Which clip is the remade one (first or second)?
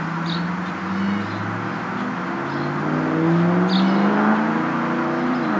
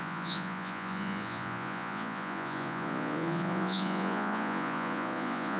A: second